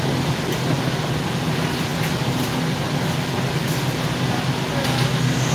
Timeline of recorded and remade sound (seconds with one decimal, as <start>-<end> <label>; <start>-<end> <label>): 0.0-5.5 recorded